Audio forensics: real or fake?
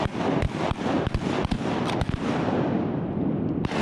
real